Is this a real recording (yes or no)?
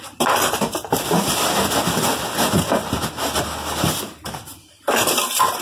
yes